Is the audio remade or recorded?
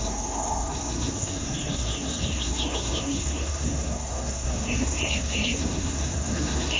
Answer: remade